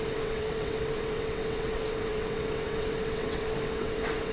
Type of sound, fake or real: fake